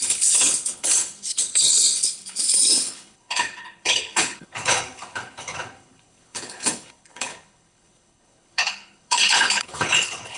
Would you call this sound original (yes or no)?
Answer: no